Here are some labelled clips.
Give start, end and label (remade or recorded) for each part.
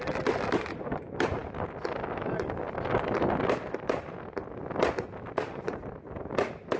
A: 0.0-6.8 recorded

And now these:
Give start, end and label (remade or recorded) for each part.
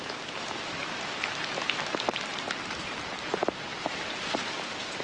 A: 0.0-0.8 remade; 0.8-2.7 recorded; 2.7-5.0 remade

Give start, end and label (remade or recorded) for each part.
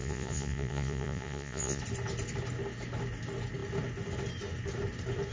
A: 0.0-1.8 remade; 1.8-5.3 recorded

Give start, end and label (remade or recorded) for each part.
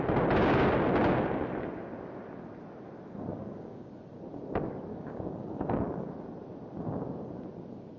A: 0.0-3.3 recorded; 3.3-3.9 remade; 3.9-4.9 recorded; 4.9-6.1 remade; 6.1-8.0 recorded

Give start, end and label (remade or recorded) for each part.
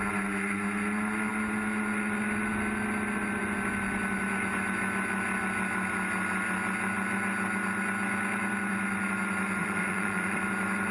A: 0.0-9.6 recorded; 9.6-10.4 remade; 10.4-10.9 recorded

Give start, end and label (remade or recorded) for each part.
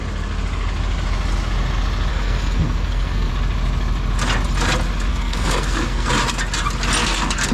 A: 0.0-2.1 recorded; 2.1-3.3 remade; 3.3-5.1 recorded; 5.1-6.1 remade; 6.1-7.0 recorded; 7.0-7.5 remade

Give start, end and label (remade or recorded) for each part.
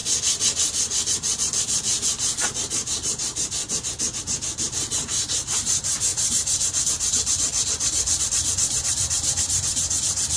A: 0.0-1.6 recorded; 1.6-3.6 remade; 3.6-4.2 recorded; 4.2-10.4 remade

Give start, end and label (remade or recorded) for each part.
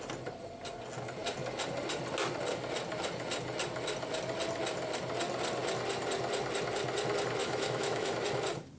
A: 0.0-7.4 recorded; 7.4-8.1 remade; 8.1-8.8 recorded